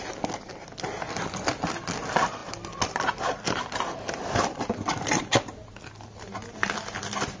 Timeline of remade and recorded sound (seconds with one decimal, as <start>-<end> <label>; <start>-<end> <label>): 0.0-7.4 recorded